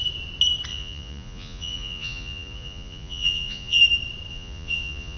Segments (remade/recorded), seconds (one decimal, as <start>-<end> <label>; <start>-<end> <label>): 0.0-0.7 recorded; 0.7-3.8 remade; 3.8-4.3 recorded; 4.3-5.2 remade